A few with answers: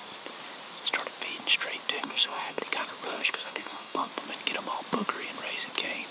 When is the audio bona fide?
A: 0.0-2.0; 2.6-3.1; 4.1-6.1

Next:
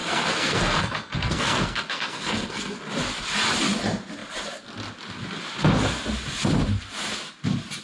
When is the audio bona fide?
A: 2.8-7.8